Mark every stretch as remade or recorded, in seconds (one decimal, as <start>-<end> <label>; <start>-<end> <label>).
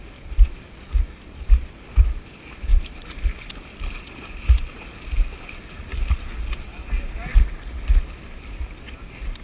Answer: 0.0-9.4 recorded